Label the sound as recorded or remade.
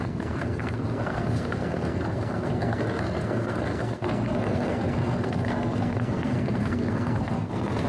remade